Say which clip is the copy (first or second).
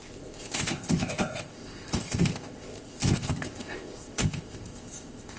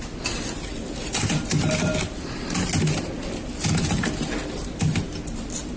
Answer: first